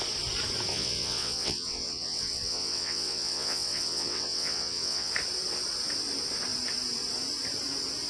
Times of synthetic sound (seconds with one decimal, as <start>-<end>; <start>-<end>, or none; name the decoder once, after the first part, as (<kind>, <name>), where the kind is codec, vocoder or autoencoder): 0.7-5.1 (vocoder, WaveNeXt)